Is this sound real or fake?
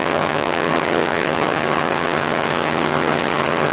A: fake